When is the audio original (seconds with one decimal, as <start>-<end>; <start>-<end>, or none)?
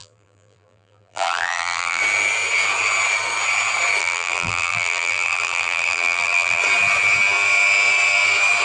2.0-4.0; 6.6-8.6